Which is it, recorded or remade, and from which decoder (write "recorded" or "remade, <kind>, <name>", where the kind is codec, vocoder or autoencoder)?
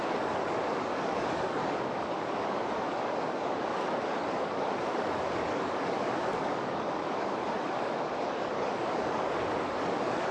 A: remade, codec, DAC